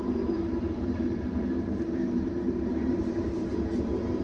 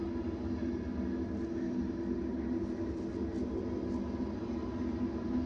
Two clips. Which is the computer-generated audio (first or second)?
first